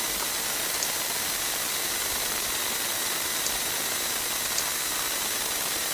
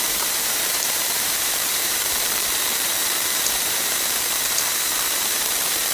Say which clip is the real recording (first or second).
first